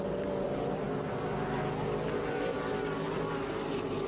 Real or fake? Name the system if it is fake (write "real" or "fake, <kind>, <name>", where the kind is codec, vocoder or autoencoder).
real